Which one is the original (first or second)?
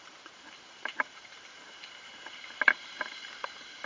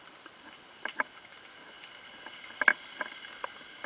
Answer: second